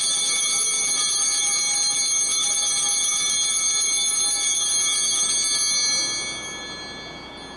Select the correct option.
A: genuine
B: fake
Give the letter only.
A